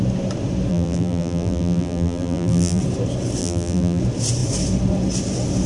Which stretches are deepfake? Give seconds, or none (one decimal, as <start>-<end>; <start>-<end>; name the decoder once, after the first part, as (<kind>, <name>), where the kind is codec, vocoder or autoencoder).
0.7-2.8 (vocoder, BigVGAN v2); 3.4-4.0